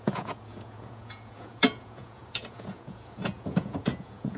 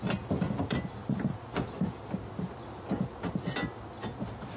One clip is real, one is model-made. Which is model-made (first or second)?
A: first